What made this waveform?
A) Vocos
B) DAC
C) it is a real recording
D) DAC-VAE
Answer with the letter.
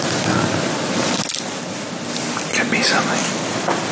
C